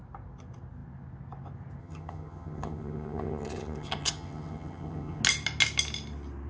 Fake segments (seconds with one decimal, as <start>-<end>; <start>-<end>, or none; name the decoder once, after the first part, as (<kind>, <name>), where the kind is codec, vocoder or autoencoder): 1.8-5.2 (vocoder, HiFi-GAN)